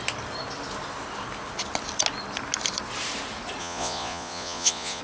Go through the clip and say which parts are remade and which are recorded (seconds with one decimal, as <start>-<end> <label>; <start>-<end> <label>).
0.0-3.6 recorded; 3.6-5.0 remade